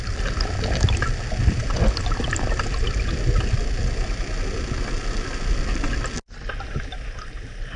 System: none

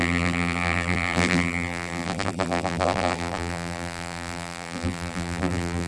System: vocoder, BigVGAN v2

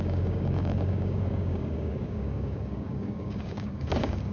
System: codec, DAC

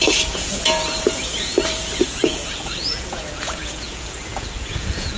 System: vocoder, Vocos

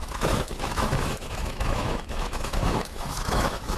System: autoencoder, DAC-VAE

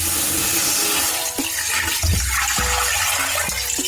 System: none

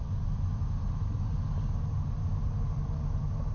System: none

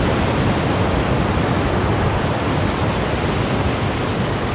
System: none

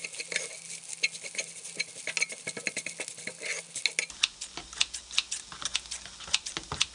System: none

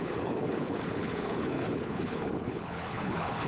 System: codec, HILCodec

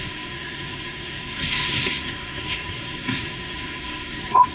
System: codec, SNAC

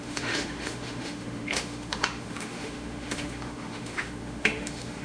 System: autoencoder, DAC-VAE